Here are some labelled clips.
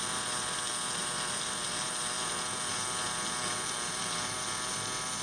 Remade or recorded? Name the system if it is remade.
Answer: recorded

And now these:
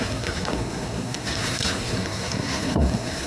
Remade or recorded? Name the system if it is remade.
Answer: remade, codec, SNAC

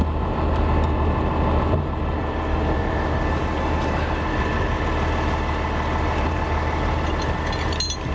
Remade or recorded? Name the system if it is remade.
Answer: recorded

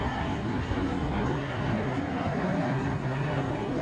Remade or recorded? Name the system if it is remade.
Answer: remade, codec, SNAC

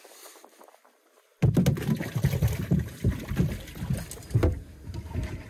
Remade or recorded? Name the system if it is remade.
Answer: recorded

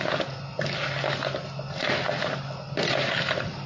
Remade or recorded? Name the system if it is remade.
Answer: recorded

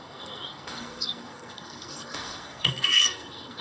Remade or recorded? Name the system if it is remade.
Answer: remade, codec, SNAC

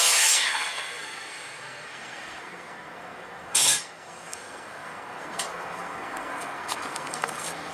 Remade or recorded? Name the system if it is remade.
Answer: remade, codec, SNAC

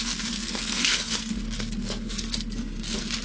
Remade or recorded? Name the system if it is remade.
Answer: remade, codec, SNAC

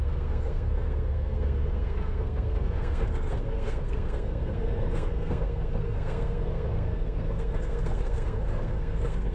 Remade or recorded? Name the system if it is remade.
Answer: remade, codec, SNAC